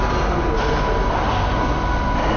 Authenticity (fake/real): real